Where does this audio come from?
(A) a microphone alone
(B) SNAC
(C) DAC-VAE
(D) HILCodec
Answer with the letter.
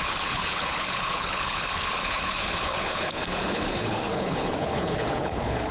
D